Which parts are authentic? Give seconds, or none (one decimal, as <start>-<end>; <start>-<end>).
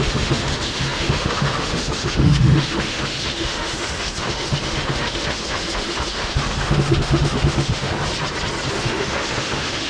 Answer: 7.9-8.7